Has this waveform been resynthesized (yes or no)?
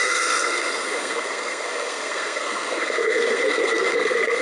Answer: yes